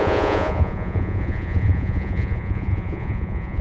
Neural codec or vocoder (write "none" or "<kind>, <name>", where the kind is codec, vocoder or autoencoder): vocoder, Vocos